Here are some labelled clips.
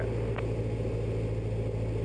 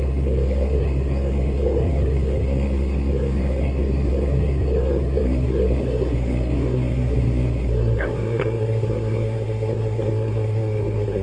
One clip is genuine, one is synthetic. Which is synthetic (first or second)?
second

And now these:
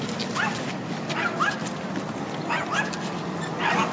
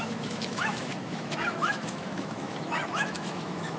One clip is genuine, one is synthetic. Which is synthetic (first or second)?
second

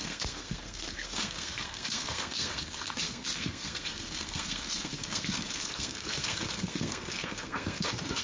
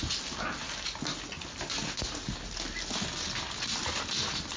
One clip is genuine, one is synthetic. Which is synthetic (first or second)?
first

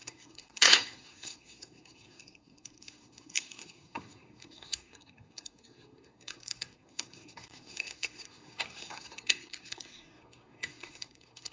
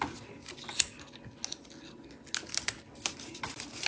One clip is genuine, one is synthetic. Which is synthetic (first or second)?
first